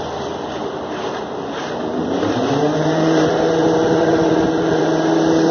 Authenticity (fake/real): fake